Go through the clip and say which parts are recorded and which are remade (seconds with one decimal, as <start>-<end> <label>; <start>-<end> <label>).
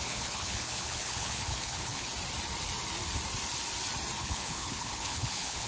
0.0-2.1 remade; 2.1-4.2 recorded; 4.2-5.7 remade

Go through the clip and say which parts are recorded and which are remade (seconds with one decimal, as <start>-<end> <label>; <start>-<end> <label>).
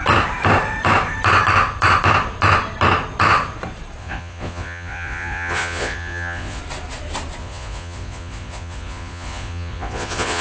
0.0-4.0 recorded; 4.0-6.6 remade; 6.6-7.4 recorded; 7.4-10.4 remade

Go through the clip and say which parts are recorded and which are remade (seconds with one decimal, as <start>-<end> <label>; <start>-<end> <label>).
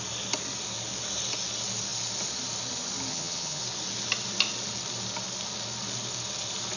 0.0-3.1 recorded; 3.1-3.6 remade; 3.6-6.8 recorded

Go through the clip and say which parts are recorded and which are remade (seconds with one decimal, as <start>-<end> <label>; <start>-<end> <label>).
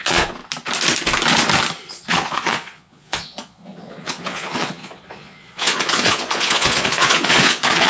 0.0-0.4 remade; 0.4-1.9 recorded; 1.9-7.9 remade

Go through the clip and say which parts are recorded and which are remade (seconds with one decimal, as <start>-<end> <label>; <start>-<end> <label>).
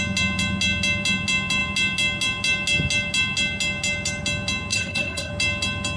0.0-4.7 recorded; 4.7-5.3 remade; 5.3-6.0 recorded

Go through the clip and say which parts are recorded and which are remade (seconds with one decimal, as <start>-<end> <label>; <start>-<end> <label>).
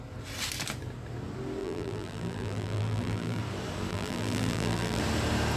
0.0-1.6 recorded; 1.6-3.4 remade; 3.4-3.9 recorded; 3.9-5.0 remade; 5.0-5.6 recorded